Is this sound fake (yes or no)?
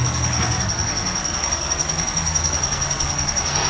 yes